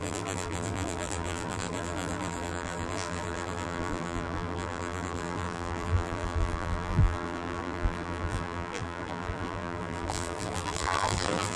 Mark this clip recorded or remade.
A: remade